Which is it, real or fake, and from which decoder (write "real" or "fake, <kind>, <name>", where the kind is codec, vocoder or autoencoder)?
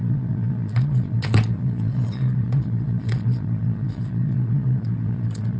fake, vocoder, Vocos